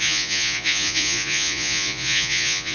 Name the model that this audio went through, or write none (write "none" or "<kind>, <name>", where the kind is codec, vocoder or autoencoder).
vocoder, Vocos